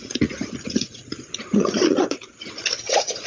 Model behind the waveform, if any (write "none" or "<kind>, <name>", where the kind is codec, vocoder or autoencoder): vocoder, Vocos